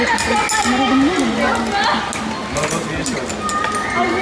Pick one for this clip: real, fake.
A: real